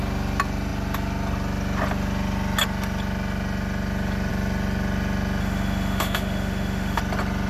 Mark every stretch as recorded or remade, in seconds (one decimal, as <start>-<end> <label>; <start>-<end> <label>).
0.0-5.4 recorded; 5.4-7.0 remade; 7.0-7.5 recorded